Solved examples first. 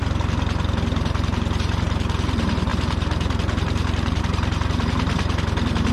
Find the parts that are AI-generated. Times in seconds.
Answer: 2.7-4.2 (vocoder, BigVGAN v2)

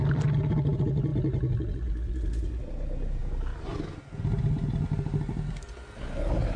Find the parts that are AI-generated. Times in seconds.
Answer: none

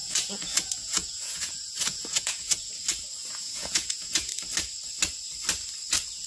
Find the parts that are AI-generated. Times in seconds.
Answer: 0.0-2.7 (vocoder, Vocos); 3.2-4.3

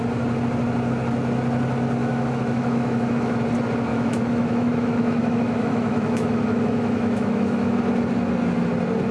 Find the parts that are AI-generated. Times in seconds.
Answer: 2.0-3.4 (autoencoder, DAC-VAE); 3.9-7.8

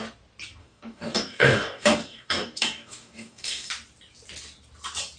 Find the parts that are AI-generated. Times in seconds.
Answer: 0.6-3.7 (codec, DAC)

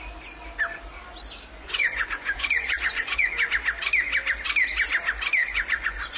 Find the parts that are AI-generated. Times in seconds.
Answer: 1.6-3.5 (vocoder, Vocos); 5.4-6.2

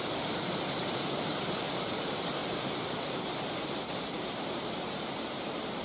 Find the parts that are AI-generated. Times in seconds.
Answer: 0.0-5.8 (vocoder, BigVGAN v2)

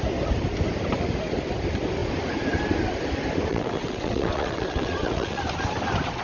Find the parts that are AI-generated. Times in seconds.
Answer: 3.5-5.4 (vocoder, WaveNeXt)